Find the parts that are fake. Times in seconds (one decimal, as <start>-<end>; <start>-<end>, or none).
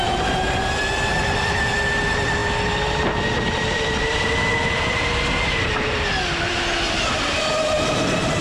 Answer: none